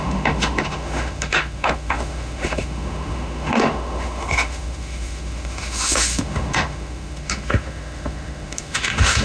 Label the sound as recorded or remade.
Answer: remade